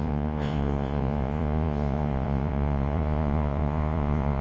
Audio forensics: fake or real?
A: fake